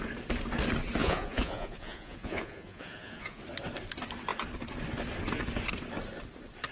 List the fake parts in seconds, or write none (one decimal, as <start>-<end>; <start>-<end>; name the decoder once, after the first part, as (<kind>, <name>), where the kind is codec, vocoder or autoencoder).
1.0-3.4 (vocoder, Vocos)